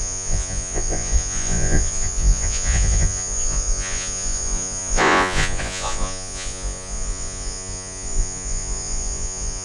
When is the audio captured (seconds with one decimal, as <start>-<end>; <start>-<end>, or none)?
none